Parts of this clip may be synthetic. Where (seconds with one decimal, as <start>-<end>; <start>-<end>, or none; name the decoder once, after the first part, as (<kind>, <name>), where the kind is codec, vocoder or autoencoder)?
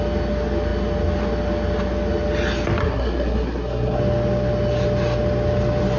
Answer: 2.8-4.0 (codec, SNAC)